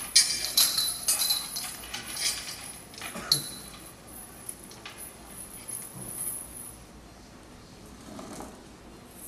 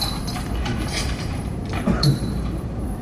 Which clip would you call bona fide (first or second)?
first